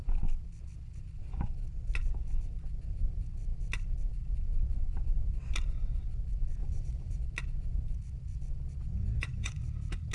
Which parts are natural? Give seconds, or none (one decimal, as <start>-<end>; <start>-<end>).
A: 0.0-6.6; 7.2-8.8; 9.6-10.1

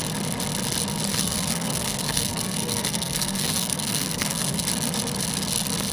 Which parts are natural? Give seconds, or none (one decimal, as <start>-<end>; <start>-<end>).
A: 0.0-1.1; 4.6-5.9